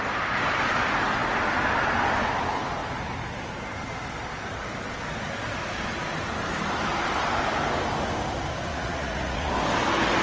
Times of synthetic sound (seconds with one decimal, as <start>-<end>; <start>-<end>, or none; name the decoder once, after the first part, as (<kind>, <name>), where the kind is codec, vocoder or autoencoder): 8.7-9.5 (vocoder, Vocos)